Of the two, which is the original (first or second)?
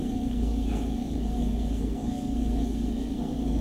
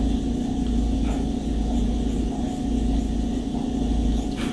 second